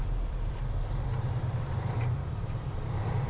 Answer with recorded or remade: remade